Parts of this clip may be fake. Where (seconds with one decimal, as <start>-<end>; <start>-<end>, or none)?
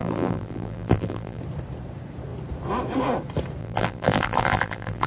0.0-1.4; 3.6-5.1